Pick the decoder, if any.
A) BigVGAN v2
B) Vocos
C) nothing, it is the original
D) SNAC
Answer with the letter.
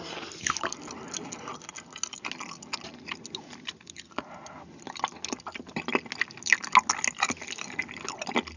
C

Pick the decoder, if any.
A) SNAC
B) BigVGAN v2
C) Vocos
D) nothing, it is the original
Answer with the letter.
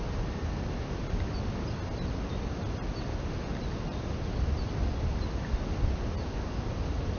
D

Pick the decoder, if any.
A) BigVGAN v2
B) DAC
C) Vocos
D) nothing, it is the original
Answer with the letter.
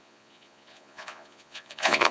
C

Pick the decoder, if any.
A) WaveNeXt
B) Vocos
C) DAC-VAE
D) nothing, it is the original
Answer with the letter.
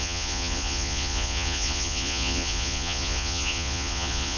B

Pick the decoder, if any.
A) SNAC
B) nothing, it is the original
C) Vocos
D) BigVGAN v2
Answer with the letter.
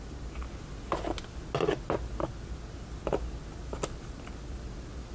B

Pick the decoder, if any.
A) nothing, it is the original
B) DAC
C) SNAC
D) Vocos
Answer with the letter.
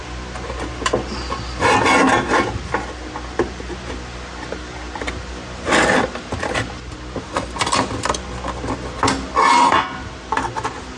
A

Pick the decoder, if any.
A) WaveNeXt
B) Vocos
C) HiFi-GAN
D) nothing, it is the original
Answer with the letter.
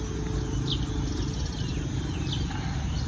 D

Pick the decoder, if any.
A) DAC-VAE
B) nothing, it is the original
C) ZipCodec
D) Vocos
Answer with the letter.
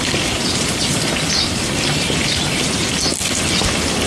B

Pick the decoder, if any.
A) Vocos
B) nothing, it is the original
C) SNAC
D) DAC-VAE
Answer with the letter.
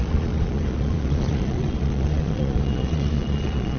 A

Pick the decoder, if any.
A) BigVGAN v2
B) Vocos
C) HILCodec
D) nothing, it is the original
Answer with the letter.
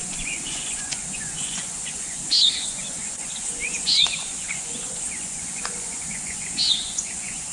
B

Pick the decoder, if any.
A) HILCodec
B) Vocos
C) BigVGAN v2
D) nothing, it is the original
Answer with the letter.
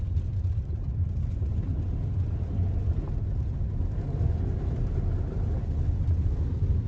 D